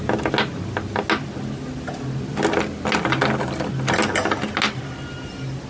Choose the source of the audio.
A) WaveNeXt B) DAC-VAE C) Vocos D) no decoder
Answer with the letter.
D